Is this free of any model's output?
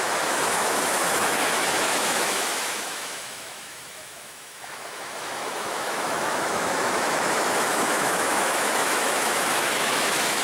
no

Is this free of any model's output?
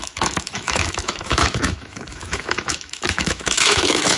no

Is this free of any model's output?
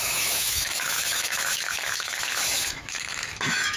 no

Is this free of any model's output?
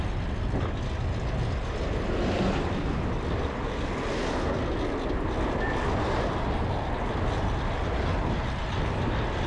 yes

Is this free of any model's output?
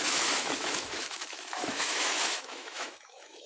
no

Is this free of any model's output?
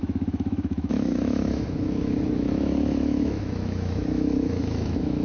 no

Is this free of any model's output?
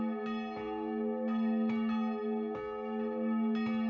yes